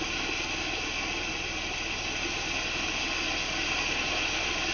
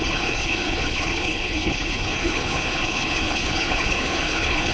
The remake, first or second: second